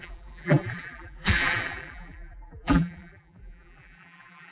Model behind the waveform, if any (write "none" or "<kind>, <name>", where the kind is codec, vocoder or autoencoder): vocoder, BigVGAN v2